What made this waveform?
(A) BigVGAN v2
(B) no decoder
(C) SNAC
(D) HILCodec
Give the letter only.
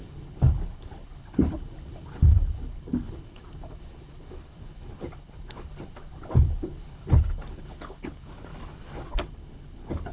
D